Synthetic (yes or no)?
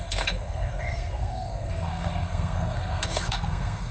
yes